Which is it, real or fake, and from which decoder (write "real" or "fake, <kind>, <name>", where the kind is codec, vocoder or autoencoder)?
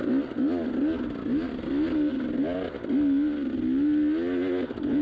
real